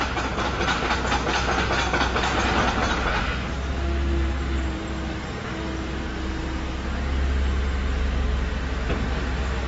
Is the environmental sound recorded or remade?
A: recorded